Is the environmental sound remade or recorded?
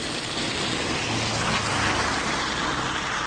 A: recorded